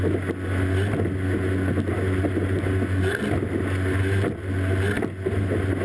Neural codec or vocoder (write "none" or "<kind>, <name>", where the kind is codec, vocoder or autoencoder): none